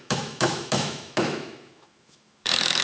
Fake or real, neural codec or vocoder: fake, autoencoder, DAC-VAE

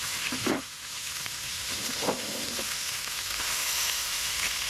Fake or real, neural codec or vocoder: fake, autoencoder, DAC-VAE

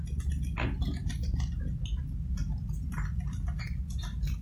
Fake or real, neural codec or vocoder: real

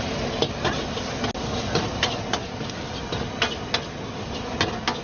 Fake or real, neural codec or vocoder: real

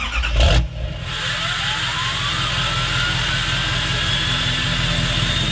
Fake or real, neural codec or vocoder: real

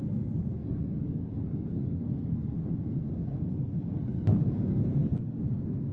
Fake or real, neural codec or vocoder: fake, codec, SNAC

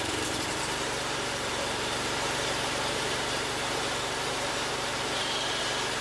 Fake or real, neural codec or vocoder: fake, vocoder, BigVGAN v2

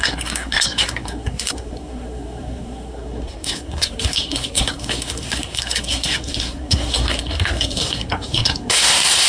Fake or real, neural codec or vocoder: fake, codec, SNAC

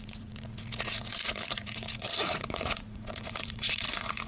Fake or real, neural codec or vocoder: fake, vocoder, Vocos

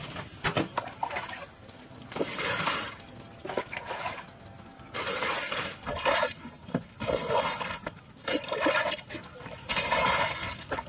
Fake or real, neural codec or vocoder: real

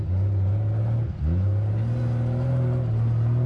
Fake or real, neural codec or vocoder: real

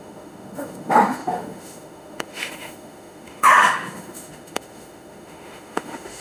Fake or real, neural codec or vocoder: fake, autoencoder, DAC-VAE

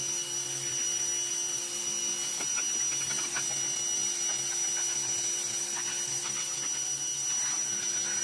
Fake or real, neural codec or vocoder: real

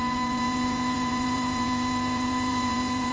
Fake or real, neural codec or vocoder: fake, vocoder, Vocos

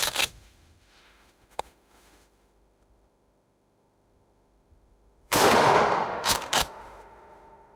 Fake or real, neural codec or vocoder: fake, autoencoder, DAC-VAE